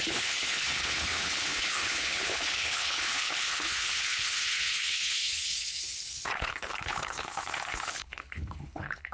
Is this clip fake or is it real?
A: fake